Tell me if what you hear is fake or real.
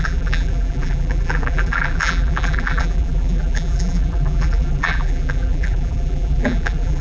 fake